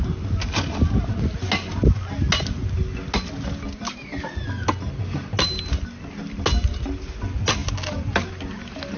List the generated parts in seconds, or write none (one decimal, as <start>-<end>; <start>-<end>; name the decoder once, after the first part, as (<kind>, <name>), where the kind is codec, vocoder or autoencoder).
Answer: none